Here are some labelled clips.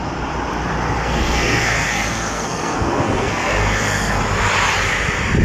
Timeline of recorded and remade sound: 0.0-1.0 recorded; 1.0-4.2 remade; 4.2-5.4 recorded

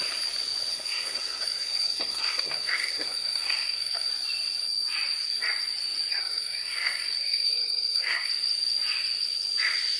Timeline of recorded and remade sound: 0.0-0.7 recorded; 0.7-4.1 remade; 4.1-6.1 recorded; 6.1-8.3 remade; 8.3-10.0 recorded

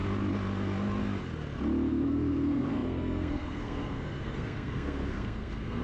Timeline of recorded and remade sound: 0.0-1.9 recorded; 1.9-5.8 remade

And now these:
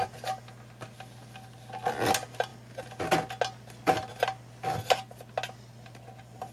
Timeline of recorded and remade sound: 0.0-6.5 recorded

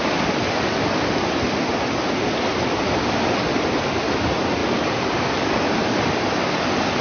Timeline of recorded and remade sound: 0.0-7.0 recorded

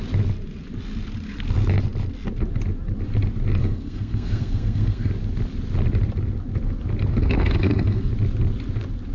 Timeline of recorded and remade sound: 0.0-3.6 recorded; 3.6-5.1 remade; 5.1-7.1 recorded; 7.1-8.1 remade; 8.1-9.1 recorded

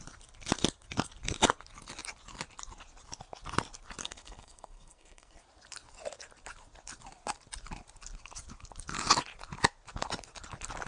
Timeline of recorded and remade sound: 0.0-4.0 recorded; 4.0-5.4 remade; 5.4-10.9 recorded

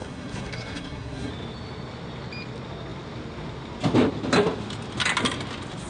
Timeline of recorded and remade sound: 0.0-1.3 remade; 1.3-5.9 recorded